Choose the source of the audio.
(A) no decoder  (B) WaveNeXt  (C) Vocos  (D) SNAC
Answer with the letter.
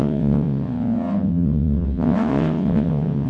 B